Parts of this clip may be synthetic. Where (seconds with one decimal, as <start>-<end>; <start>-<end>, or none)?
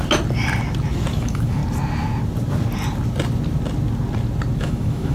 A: 1.2-1.6; 4.6-5.1